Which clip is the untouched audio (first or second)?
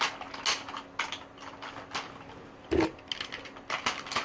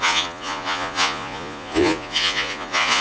first